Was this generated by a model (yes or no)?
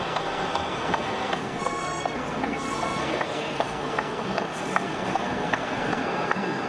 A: yes